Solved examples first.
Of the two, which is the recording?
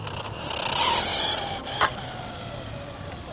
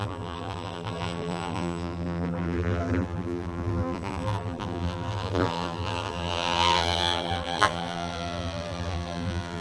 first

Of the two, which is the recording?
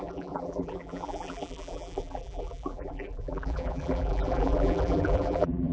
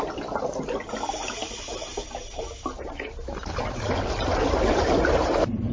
second